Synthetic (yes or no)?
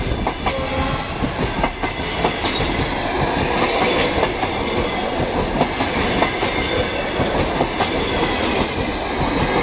no